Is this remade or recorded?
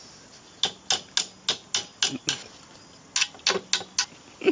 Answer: recorded